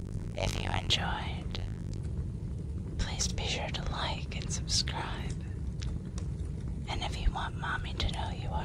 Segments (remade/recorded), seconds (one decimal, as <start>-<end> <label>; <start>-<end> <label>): 0.0-0.9 remade; 0.9-1.5 recorded; 1.5-2.0 remade; 2.0-8.6 recorded